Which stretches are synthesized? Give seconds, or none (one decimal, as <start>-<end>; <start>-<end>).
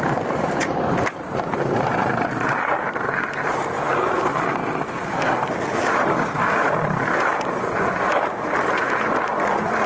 0.0-4.6; 6.0-9.9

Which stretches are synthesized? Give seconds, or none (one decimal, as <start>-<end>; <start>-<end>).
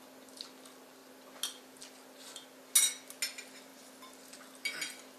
none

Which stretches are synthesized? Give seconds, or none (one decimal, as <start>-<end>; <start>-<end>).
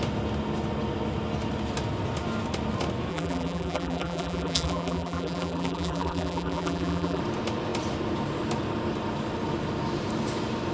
3.1-7.2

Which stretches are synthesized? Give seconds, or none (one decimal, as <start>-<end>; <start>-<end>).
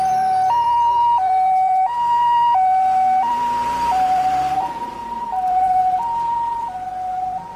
0.0-7.6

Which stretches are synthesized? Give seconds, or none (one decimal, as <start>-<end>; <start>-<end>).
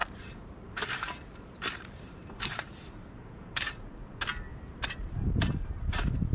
0.0-3.8; 4.5-5.3